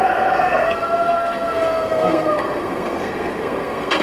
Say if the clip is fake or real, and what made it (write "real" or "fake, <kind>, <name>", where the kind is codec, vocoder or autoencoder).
fake, codec, SNAC